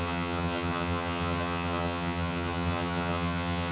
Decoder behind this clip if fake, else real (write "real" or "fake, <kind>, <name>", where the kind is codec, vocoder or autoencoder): fake, vocoder, HiFi-GAN